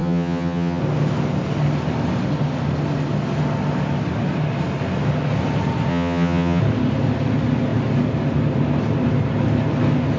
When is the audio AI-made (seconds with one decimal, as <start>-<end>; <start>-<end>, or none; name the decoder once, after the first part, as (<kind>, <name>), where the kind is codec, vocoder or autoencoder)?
0.0-0.8 (vocoder, HiFi-GAN); 5.9-6.6